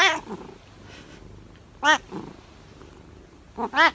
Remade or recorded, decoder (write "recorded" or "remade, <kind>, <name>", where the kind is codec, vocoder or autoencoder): recorded